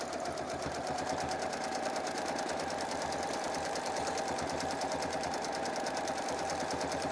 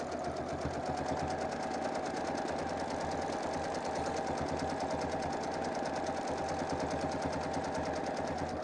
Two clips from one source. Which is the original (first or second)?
second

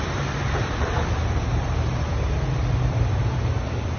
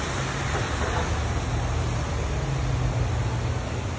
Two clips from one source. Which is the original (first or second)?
second